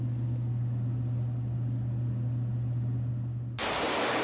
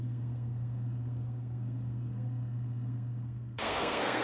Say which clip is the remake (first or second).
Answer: second